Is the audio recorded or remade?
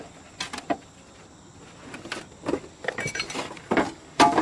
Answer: recorded